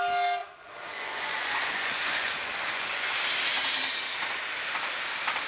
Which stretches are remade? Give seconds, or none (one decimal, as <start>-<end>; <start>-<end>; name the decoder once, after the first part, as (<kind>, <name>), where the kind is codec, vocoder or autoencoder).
0.4-3.1 (vocoder, Vocos)